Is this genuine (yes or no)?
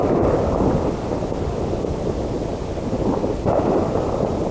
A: yes